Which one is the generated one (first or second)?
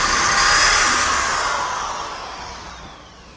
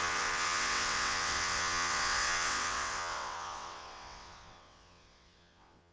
second